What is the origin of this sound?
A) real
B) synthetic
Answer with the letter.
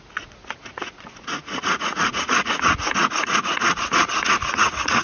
B